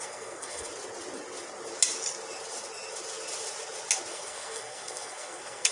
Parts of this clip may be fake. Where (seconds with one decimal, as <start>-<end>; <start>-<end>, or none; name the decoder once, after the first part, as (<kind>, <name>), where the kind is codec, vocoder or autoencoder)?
0.0-0.7 (codec, SNAC); 4.1-5.7